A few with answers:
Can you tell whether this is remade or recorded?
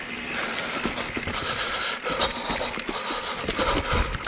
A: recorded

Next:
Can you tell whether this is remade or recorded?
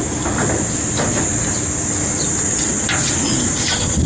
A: recorded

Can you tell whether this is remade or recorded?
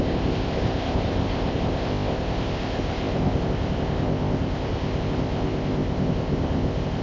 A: remade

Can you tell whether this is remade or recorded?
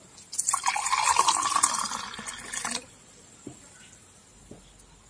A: recorded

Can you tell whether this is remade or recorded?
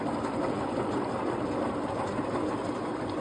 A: recorded